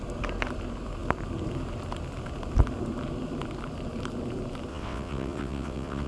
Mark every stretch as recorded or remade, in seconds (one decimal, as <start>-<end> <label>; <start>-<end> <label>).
0.0-4.7 recorded; 4.7-6.1 remade